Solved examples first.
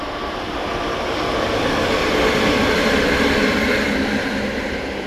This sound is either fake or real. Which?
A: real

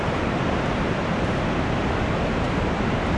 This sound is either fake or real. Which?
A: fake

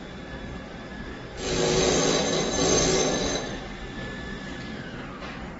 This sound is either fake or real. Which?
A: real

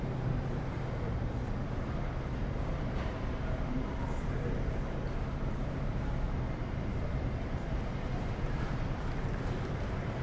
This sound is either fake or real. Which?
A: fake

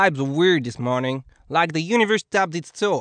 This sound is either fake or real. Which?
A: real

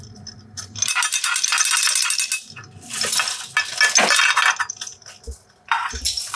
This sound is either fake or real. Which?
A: real